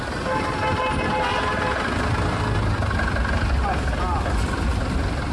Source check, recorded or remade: recorded